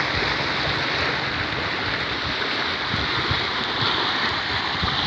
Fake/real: real